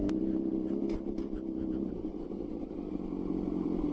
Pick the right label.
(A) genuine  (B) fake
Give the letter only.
A